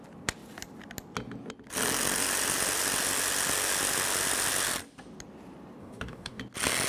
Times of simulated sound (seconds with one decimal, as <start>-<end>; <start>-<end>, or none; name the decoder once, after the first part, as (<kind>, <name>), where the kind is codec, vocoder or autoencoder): 5.8-6.4 (codec, DAC)